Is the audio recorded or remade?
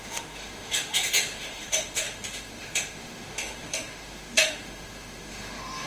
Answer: remade